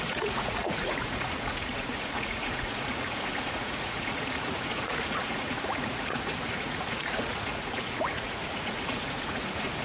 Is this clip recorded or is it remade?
remade